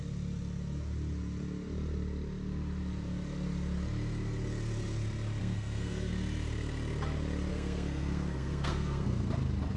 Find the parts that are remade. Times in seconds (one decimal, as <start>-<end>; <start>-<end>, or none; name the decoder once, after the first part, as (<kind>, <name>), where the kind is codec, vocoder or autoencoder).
5.4-6.1 (codec, SNAC); 7.5-9.3

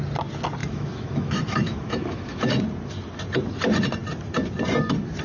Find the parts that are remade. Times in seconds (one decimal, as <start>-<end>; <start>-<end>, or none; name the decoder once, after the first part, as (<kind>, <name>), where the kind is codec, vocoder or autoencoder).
0.6-2.5 (autoencoder, DAC-VAE)

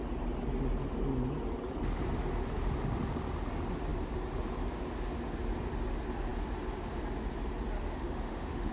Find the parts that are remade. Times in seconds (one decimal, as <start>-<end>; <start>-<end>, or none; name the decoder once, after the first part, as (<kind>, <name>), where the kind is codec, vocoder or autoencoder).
7.9-8.7 (autoencoder, DAC-VAE)

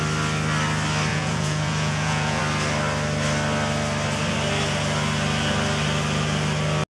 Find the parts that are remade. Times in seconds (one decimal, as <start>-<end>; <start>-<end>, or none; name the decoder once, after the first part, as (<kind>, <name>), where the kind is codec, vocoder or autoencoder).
1.1-2.4 (vocoder, Vocos)